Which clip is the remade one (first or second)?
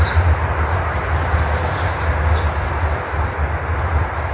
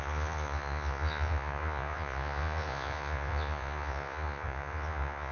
second